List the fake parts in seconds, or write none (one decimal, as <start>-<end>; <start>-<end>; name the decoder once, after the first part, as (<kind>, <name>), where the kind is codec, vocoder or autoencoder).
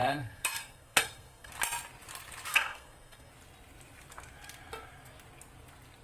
0.0-1.5 (codec, SNAC); 2.5-3.3